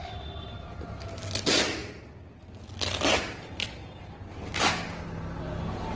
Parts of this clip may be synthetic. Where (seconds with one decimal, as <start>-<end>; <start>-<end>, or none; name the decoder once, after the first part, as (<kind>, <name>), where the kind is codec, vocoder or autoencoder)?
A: none